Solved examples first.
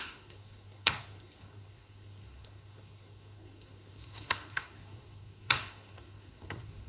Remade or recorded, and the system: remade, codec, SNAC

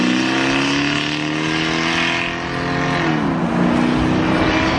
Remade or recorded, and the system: recorded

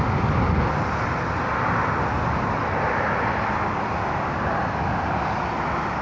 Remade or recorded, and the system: recorded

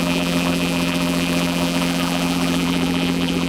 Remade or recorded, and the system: remade, vocoder, BigVGAN v2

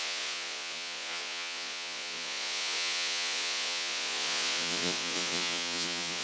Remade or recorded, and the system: remade, vocoder, Vocos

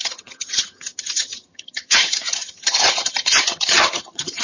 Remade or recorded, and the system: remade, vocoder, HiFi-GAN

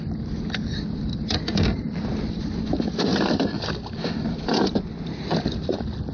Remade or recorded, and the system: recorded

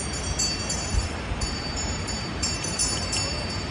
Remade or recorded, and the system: remade, vocoder, BigVGAN v2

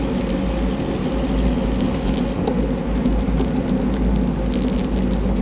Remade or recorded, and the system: recorded